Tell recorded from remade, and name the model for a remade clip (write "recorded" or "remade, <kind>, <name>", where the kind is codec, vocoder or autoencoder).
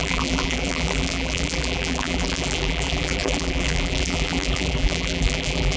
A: remade, vocoder, BigVGAN v2